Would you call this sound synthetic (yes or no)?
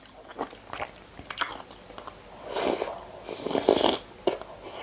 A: no